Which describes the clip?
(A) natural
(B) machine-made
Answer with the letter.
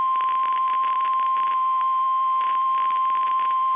B